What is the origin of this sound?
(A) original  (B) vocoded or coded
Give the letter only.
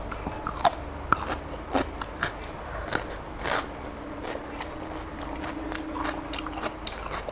A